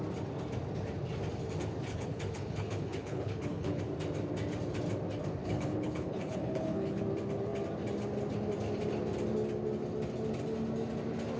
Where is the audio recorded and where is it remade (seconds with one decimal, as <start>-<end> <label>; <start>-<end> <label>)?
0.0-1.9 recorded; 1.9-3.8 remade; 3.8-5.4 recorded; 5.4-7.0 remade; 7.0-11.4 recorded